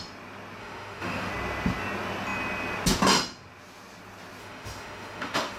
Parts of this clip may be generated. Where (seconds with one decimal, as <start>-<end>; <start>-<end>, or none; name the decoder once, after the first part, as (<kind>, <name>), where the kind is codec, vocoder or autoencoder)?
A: 0.6-1.3 (autoencoder, DAC-VAE); 4.4-5.6